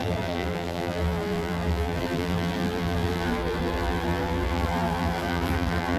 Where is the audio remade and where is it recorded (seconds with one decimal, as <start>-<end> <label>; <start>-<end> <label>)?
0.0-6.0 remade